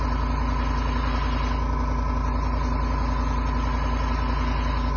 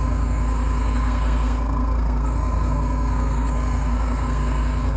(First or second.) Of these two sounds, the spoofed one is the second